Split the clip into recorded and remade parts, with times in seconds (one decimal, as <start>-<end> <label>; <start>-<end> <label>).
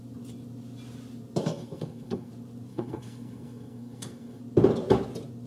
0.0-1.4 recorded; 1.4-2.3 remade; 2.3-2.7 recorded; 2.7-4.4 remade; 4.4-5.5 recorded